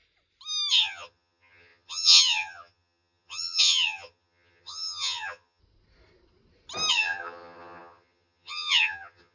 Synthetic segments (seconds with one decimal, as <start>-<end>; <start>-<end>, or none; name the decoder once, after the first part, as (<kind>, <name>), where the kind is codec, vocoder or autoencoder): 0.7-5.6 (vocoder, HiFi-GAN); 6.9-9.3